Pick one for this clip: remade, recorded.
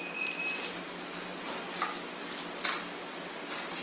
recorded